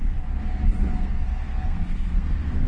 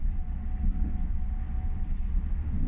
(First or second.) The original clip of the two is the second